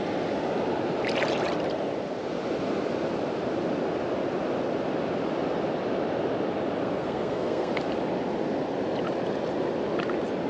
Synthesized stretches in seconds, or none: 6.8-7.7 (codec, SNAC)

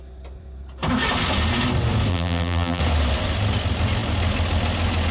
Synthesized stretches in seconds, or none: 2.1-2.8 (vocoder, BigVGAN v2)

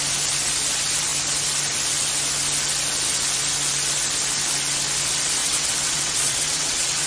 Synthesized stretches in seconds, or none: 5.4-7.1 (vocoder, WaveNeXt)